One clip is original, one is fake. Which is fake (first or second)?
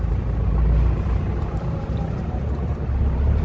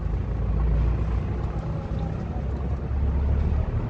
first